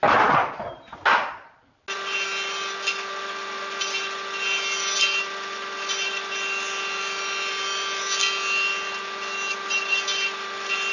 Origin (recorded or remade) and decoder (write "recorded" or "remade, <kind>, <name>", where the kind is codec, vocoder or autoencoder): recorded